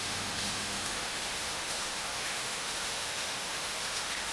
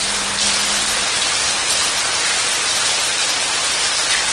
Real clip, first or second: second